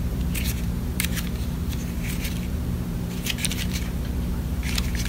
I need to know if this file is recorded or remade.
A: remade